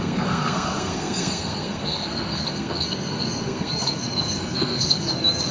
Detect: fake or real fake